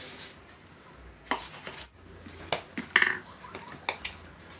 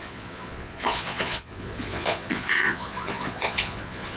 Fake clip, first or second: second